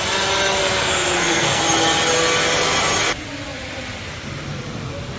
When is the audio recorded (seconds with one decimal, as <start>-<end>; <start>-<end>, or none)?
0.0-0.6; 1.6-5.2